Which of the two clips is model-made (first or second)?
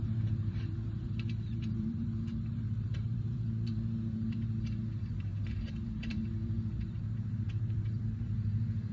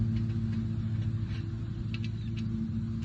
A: first